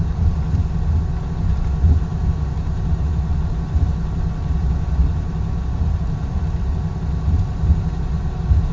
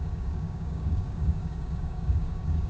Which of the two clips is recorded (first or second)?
first